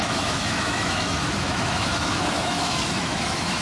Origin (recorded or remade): remade